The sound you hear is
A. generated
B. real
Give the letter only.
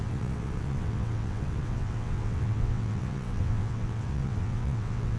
A